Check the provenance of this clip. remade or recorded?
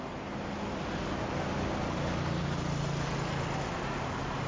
recorded